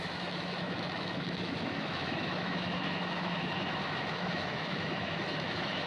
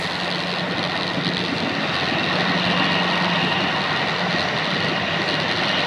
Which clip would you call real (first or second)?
second